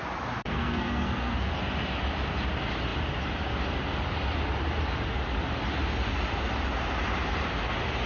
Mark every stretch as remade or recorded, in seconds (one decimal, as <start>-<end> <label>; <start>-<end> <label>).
0.0-0.4 recorded; 0.4-1.5 remade; 1.5-8.1 recorded